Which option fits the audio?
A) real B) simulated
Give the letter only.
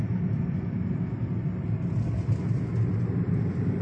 A